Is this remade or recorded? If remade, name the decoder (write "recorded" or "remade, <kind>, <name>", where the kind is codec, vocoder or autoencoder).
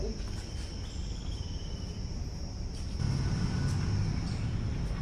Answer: recorded